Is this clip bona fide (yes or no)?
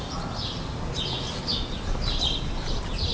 yes